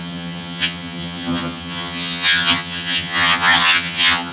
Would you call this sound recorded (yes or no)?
no